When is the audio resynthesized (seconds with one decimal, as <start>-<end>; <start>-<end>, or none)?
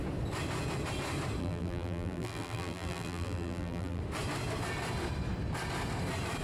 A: 1.4-4.0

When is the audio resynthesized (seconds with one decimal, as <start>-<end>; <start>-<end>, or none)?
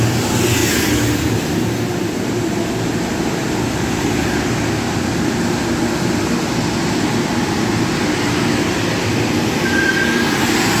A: none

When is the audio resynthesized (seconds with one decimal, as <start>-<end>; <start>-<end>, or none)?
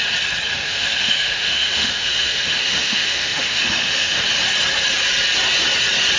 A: 0.5-4.2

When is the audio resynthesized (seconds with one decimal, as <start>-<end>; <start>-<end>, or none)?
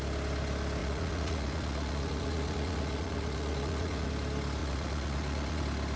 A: 0.8-4.1; 4.6-5.6